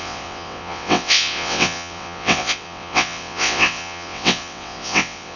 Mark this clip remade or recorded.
remade